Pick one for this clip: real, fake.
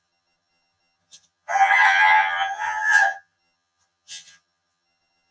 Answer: fake